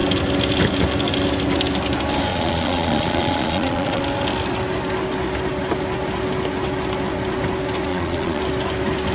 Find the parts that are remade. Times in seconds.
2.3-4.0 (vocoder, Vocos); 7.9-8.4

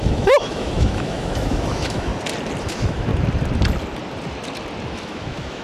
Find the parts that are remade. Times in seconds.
0.0-2.1 (autoencoder, DAC-VAE); 2.6-3.1; 4.9-5.6

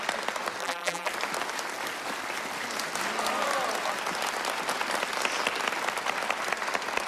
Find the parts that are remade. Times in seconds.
0.6-1.1 (vocoder, BigVGAN v2)

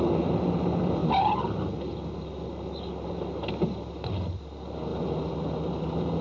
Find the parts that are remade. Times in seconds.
none

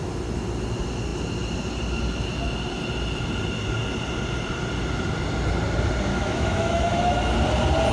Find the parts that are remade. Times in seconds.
6.1-7.3 (autoencoder, DAC-VAE)